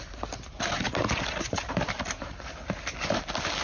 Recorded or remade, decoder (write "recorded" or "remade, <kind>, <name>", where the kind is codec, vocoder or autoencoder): recorded